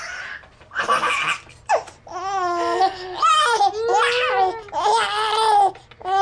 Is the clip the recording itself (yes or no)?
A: yes